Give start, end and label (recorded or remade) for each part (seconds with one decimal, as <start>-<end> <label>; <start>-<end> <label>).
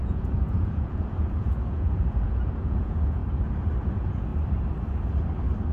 0.0-3.2 remade; 3.2-3.8 recorded; 3.8-4.3 remade; 4.3-5.7 recorded